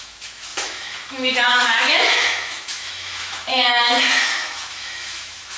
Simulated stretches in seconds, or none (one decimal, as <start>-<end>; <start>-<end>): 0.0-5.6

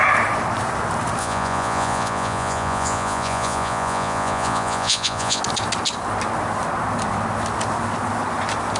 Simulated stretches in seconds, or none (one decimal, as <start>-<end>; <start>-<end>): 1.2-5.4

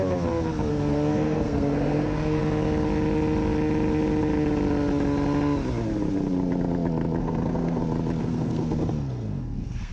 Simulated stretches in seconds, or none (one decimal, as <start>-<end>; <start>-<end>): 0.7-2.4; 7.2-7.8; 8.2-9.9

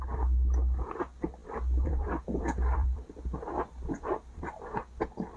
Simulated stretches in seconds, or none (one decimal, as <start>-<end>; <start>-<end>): 1.4-4.6

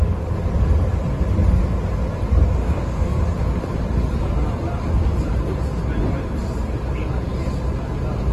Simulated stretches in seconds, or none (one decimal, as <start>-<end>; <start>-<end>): 2.6-3.2